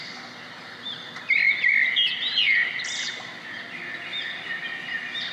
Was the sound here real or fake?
real